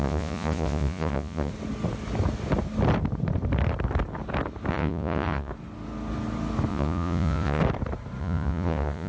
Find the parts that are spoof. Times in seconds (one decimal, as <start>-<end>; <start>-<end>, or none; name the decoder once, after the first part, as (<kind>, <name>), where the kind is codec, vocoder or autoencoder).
0.0-1.5 (vocoder, Vocos); 4.7-5.5; 6.7-7.6; 8.2-9.1